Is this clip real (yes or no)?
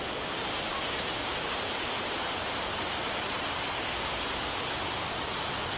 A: yes